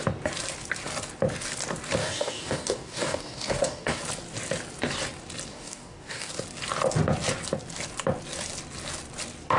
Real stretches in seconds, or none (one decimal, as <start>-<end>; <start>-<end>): 0.0-2.0; 4.0-5.5; 6.3-9.6